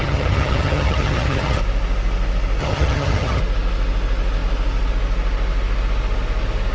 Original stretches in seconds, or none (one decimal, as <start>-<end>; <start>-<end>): 1.6-2.6; 3.4-6.7